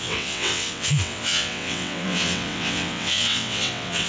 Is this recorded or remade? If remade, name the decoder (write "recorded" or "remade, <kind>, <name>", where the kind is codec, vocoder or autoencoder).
remade, vocoder, WaveNeXt